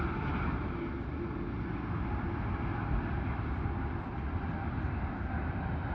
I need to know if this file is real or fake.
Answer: real